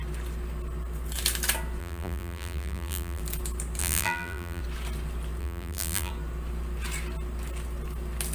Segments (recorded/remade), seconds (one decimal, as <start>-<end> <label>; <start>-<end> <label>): 0.0-1.8 recorded; 1.8-3.2 remade; 3.2-3.8 recorded; 3.8-4.6 remade; 4.6-5.4 recorded; 5.4-6.1 remade; 6.1-8.3 recorded